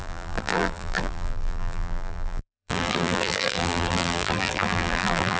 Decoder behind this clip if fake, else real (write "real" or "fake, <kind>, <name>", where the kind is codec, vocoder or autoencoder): fake, vocoder, BigVGAN v2